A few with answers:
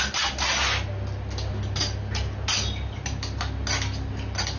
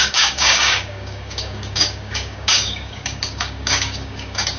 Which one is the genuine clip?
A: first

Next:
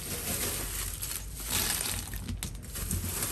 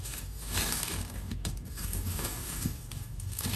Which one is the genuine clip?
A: first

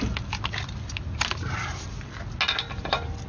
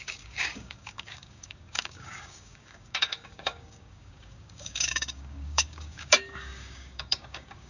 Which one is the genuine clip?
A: first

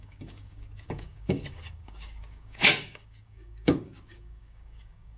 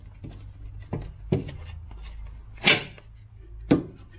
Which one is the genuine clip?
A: second